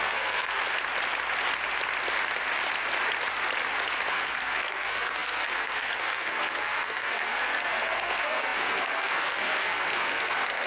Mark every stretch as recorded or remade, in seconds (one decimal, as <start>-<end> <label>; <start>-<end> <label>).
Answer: 0.0-0.6 remade; 0.6-4.1 recorded; 4.1-10.7 remade